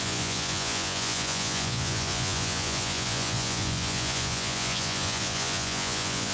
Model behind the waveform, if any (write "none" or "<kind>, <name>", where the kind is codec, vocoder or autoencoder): vocoder, Vocos